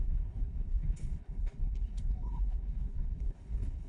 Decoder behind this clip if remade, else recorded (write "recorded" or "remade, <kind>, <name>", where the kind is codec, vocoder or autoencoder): remade, codec, HILCodec